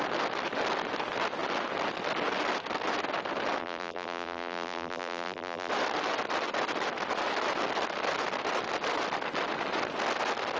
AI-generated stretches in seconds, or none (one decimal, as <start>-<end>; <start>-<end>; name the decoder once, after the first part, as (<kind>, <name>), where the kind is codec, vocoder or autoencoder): 3.6-5.7 (vocoder, BigVGAN v2)